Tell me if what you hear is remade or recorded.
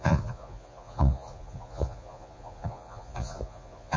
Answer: remade